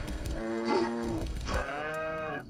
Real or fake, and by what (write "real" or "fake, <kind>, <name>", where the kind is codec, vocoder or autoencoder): fake, codec, SNAC